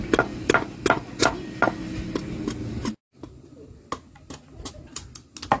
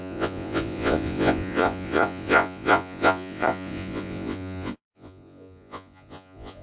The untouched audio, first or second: first